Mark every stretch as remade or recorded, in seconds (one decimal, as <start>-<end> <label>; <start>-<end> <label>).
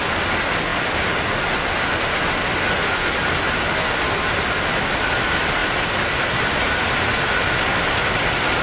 0.0-8.6 recorded